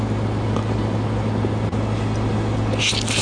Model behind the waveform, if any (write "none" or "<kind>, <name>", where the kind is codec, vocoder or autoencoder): none